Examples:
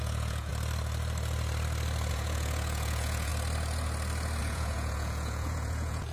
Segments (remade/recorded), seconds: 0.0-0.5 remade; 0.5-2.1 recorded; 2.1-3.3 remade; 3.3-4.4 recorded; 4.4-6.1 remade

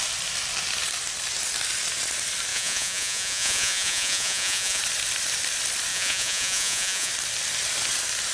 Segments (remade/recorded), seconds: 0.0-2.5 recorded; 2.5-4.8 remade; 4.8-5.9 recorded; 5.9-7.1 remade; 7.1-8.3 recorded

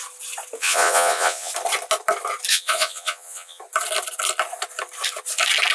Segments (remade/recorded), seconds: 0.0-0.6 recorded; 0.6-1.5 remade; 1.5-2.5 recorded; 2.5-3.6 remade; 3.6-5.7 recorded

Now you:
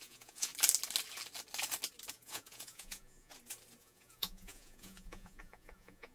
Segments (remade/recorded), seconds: 0.0-0.5 remade; 0.5-2.1 recorded; 2.1-3.3 remade; 3.3-3.8 recorded; 3.8-6.1 remade

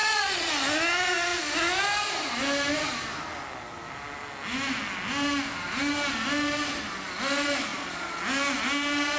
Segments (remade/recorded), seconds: 0.0-0.5 remade; 0.5-7.7 recorded; 7.7-8.2 remade; 8.2-9.2 recorded